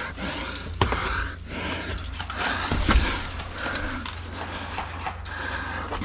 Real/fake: real